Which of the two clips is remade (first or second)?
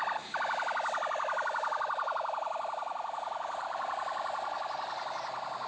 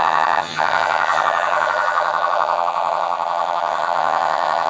second